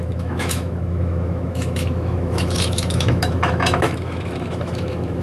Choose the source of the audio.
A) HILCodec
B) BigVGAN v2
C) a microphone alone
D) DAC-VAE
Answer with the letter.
D